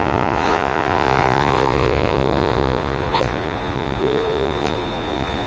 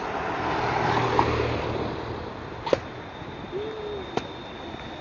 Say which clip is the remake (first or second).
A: first